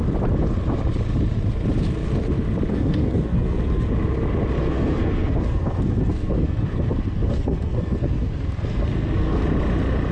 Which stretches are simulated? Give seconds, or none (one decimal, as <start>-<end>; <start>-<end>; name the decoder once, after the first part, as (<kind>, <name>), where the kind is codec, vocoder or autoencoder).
2.7-3.9 (codec, SNAC); 4.6-9.4